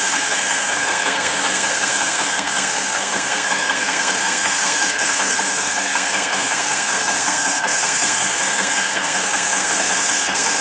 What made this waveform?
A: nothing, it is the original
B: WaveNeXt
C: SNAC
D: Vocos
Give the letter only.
C